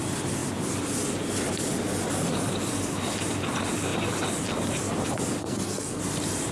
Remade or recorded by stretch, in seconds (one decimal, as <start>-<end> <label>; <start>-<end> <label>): 0.0-5.4 recorded; 5.4-6.0 remade; 6.0-6.5 recorded